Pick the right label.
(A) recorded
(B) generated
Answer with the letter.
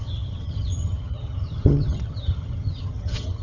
B